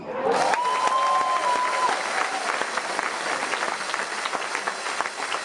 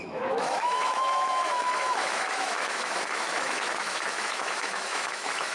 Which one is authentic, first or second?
first